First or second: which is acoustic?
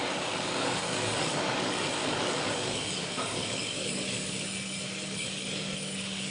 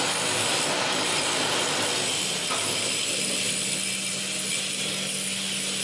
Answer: second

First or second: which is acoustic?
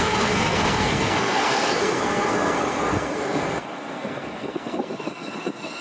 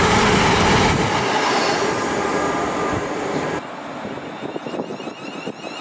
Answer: second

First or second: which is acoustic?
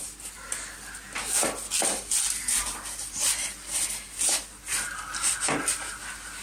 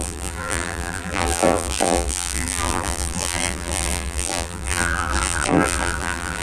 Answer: first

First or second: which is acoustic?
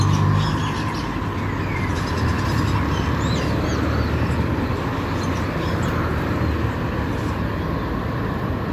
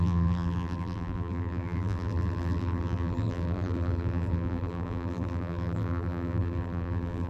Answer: first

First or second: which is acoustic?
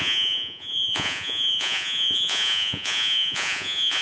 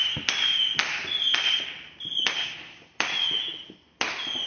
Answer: second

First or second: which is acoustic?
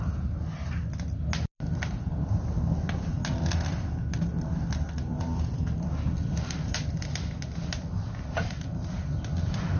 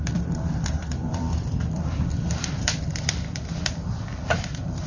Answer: first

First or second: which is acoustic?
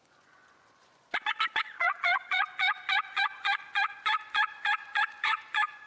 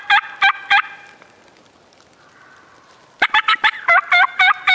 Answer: second